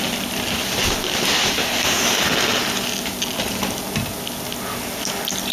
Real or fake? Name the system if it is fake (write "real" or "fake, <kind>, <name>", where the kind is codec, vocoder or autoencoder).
real